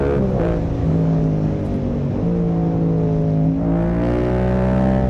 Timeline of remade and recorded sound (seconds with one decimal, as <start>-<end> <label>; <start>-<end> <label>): 0.0-0.8 recorded; 0.8-1.6 remade; 1.6-5.1 recorded